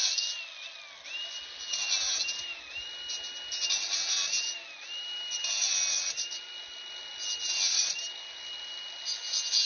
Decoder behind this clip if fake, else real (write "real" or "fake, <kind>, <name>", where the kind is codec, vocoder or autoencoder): real